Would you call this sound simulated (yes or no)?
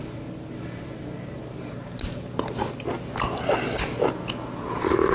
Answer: no